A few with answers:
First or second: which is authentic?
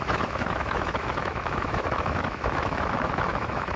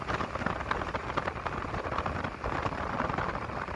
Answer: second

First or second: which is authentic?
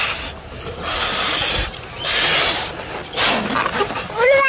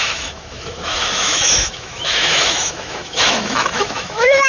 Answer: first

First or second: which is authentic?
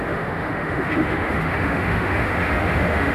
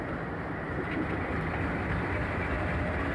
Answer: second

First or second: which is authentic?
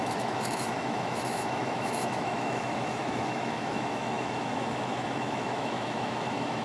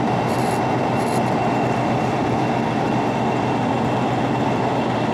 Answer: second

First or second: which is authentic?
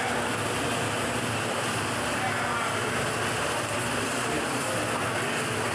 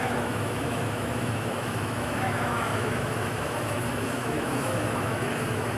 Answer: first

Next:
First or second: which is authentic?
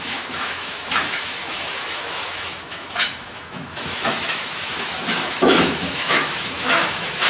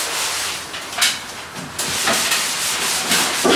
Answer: second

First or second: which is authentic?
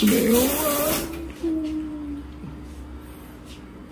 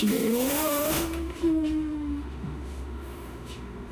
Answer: first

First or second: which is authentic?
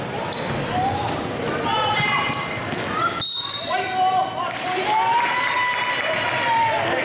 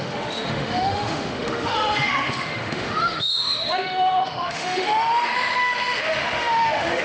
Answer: first